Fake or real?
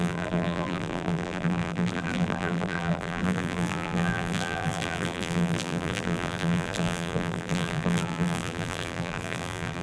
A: fake